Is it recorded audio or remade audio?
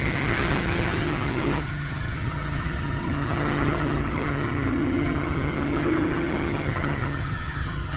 remade